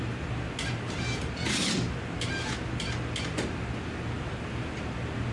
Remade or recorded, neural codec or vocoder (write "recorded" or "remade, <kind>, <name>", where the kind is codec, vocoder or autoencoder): recorded